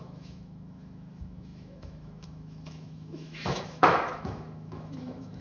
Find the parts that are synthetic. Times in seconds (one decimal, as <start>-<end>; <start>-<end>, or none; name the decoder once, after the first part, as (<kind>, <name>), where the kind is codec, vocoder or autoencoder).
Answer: 0.0-5.4 (autoencoder, DAC-VAE)